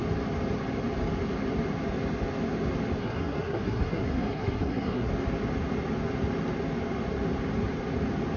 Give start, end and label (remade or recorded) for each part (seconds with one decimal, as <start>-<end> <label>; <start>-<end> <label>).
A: 0.0-3.0 recorded; 3.0-5.1 remade; 5.1-8.4 recorded